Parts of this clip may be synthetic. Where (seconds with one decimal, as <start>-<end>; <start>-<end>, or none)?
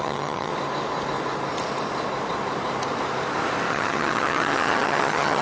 0.0-0.5; 3.7-5.4